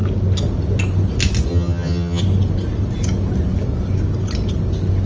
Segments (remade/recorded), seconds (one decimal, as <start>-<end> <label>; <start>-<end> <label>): 0.0-1.5 recorded; 1.5-2.2 remade; 2.2-5.1 recorded